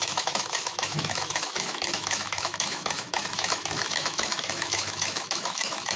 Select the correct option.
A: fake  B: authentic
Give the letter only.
A